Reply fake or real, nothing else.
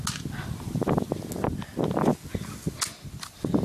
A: real